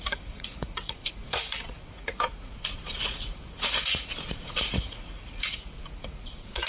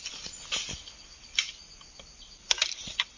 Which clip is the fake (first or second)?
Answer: first